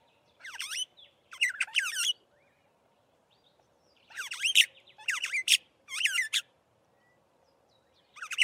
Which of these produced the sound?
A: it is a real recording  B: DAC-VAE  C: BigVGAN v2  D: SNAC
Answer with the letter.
C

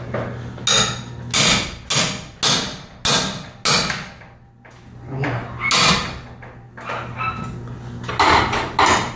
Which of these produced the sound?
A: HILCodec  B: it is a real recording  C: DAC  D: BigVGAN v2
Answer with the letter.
B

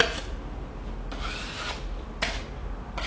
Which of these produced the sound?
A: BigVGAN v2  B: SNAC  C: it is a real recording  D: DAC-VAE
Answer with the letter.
C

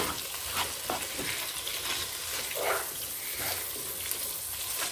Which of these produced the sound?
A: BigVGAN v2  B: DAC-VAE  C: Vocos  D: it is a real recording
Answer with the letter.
D